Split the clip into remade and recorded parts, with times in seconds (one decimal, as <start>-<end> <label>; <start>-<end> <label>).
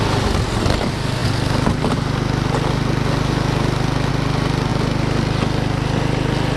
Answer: 0.0-6.6 recorded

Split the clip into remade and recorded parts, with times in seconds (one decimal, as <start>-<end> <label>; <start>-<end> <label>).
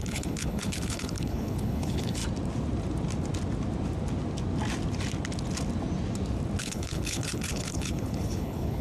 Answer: 0.0-2.2 remade; 2.2-6.6 recorded; 6.6-8.8 remade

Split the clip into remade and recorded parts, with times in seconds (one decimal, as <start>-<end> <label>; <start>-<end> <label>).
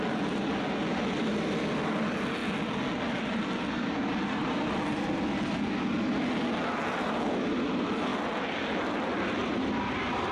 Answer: 0.0-10.3 recorded